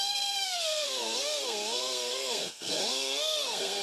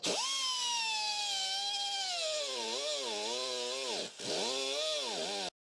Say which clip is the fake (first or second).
first